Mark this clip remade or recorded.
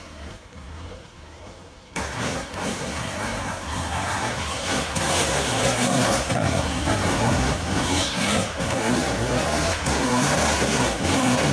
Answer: remade